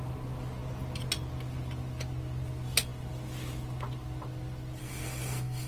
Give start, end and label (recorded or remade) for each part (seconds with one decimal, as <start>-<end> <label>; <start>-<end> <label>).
0.0-4.8 recorded; 4.8-5.7 remade

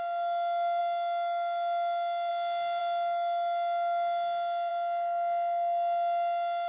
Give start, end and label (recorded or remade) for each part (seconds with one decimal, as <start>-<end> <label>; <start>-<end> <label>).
0.0-6.7 recorded

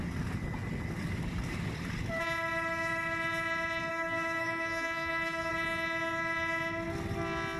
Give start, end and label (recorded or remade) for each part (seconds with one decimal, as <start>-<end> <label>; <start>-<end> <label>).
0.0-3.9 recorded; 3.9-5.5 remade; 5.5-7.6 recorded

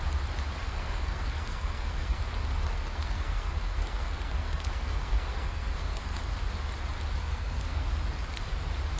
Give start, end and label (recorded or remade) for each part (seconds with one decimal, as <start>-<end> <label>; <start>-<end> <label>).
0.0-0.6 recorded; 0.6-2.2 remade; 2.2-2.7 recorded; 2.7-6.2 remade; 6.2-7.2 recorded; 7.2-7.9 remade; 7.9-9.0 recorded